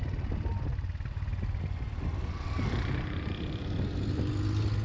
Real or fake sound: real